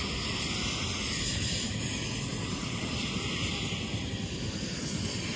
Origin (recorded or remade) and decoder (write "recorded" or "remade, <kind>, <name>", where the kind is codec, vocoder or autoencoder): recorded